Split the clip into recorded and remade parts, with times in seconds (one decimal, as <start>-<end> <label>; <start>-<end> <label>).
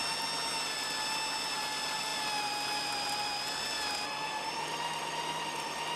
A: 0.0-6.0 recorded